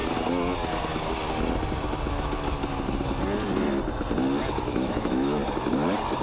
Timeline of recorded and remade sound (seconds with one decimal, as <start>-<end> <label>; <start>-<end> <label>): 0.0-2.1 recorded; 2.1-2.6 remade; 2.6-4.7 recorded; 4.7-5.4 remade; 5.4-6.2 recorded